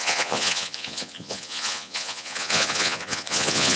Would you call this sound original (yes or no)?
no